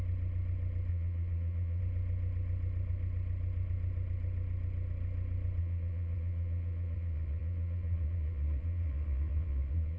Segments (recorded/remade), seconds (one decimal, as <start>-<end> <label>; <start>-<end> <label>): 0.0-0.9 recorded; 0.9-1.8 remade; 1.8-5.6 recorded; 5.6-10.0 remade